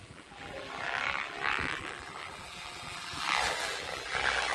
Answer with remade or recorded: remade